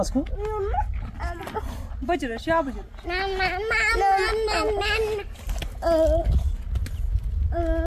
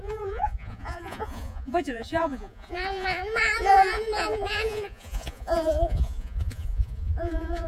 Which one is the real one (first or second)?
first